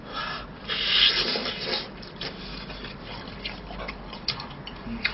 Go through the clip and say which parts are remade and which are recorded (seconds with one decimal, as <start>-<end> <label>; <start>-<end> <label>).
0.0-5.1 recorded